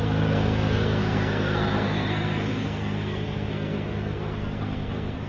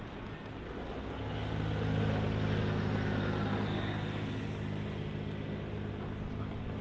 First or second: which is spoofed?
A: first